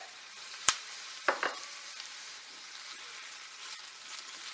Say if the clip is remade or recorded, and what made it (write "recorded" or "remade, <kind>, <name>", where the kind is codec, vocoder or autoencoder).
remade, vocoder, BigVGAN v2